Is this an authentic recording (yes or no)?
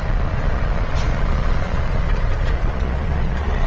no